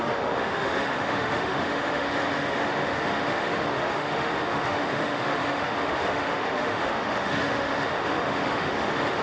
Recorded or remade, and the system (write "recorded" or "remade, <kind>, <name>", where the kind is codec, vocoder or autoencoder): remade, autoencoder, DAC-VAE